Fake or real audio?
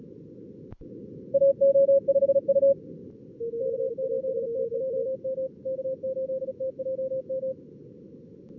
real